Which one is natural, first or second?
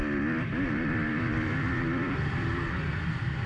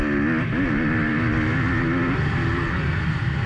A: second